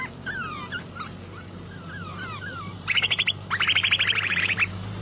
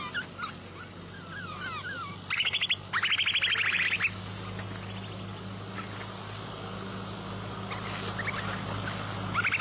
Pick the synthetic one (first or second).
first